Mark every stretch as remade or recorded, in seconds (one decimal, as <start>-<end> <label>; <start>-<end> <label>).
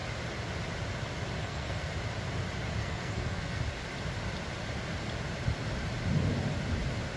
0.0-1.4 recorded; 1.4-1.9 remade; 1.9-2.8 recorded; 2.8-3.6 remade; 3.6-7.2 recorded